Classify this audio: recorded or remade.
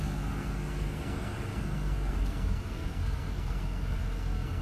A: remade